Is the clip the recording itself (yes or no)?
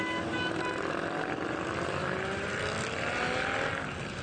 yes